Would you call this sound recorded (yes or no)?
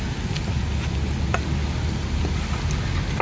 yes